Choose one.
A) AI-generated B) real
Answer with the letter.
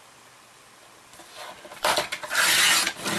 A